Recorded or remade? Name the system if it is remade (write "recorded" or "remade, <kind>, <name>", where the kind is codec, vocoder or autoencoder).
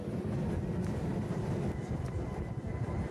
remade, vocoder, BigVGAN v2